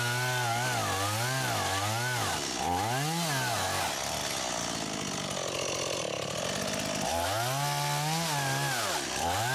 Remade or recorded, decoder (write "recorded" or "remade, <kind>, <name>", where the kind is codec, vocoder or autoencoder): recorded